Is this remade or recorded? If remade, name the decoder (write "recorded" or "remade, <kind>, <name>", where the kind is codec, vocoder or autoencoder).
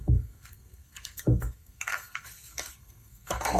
remade, codec, SNAC